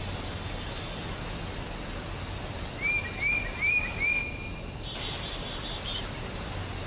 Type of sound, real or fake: real